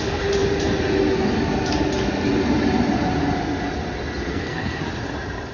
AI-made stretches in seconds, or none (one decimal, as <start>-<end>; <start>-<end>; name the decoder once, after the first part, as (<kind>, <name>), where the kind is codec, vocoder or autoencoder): 4.3-4.8 (codec, SNAC)